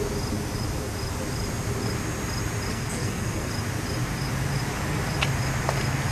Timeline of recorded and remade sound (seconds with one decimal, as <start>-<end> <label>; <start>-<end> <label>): 0.0-2.7 recorded; 2.7-3.5 remade; 3.5-6.1 recorded